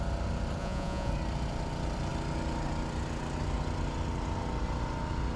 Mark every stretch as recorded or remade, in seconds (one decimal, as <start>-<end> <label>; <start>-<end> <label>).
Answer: 0.0-0.6 recorded; 0.6-1.1 remade; 1.1-5.4 recorded